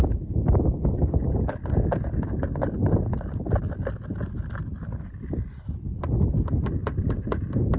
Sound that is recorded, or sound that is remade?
recorded